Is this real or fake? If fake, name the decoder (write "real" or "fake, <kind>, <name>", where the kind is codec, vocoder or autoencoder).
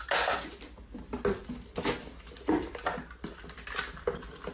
real